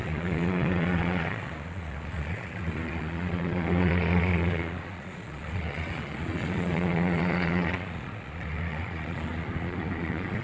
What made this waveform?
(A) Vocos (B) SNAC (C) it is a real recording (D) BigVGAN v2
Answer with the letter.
A